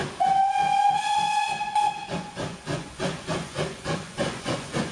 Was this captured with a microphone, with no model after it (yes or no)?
no